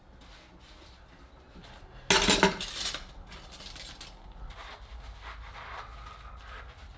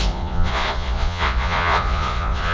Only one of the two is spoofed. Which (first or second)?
second